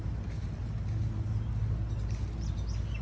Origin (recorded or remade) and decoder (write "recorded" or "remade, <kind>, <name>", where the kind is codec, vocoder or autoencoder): recorded